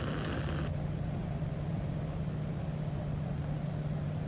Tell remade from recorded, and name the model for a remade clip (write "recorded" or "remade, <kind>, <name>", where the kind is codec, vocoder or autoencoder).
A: recorded